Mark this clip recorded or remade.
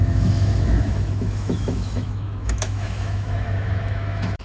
remade